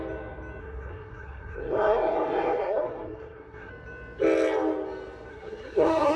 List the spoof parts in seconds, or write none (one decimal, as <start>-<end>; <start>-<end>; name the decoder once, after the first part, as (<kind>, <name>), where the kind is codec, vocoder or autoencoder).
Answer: 0.6-3.7 (codec, SNAC); 5.3-6.2